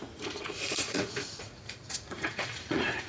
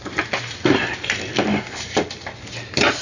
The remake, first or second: first